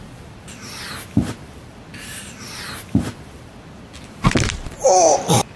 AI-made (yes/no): yes